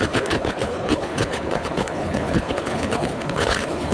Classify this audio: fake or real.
fake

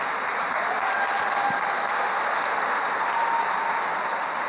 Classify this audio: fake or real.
real